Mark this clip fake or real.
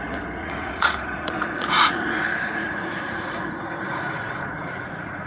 fake